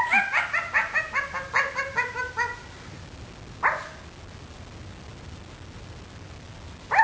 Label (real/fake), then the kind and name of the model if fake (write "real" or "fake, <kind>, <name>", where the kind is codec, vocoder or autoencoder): real